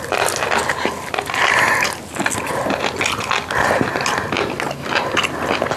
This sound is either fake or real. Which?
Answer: real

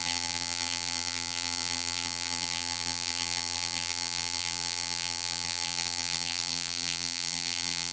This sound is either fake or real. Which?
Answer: fake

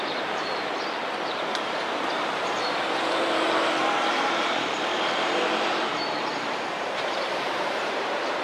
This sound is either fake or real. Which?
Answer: fake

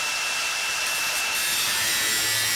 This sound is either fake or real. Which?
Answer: fake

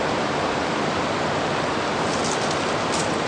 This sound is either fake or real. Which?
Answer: real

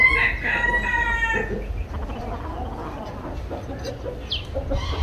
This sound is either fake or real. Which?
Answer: real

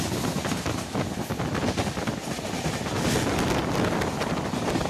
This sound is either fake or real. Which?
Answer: real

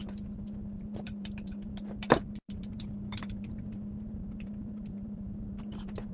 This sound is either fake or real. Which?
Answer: fake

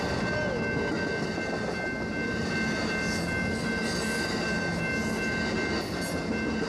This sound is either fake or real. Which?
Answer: real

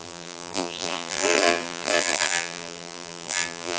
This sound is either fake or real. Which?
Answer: fake